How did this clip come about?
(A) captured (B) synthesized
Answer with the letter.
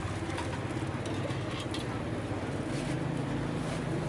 A